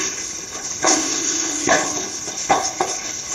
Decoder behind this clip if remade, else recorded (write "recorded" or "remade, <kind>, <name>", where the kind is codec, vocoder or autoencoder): remade, codec, HILCodec